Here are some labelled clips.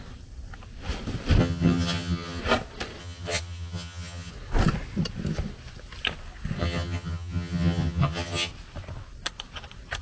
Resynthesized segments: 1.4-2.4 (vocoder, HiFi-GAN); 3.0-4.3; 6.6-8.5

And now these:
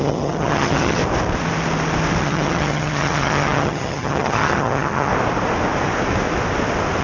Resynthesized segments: 0.0-1.0 (vocoder, HiFi-GAN); 2.2-5.1